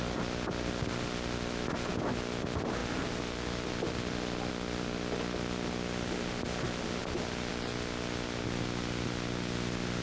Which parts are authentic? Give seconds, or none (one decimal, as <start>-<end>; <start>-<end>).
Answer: 0.0-10.0